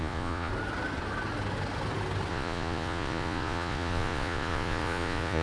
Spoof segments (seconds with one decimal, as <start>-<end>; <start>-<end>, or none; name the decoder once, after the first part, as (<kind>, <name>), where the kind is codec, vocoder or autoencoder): 0.0-0.5 (vocoder, Vocos); 2.3-5.4